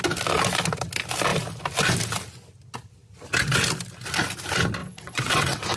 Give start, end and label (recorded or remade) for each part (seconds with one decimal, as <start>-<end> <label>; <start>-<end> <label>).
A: 0.0-4.8 recorded; 4.8-5.8 remade